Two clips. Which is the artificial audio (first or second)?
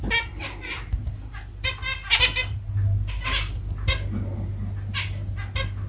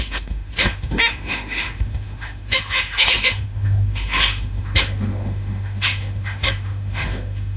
second